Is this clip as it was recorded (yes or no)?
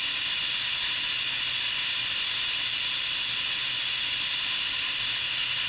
yes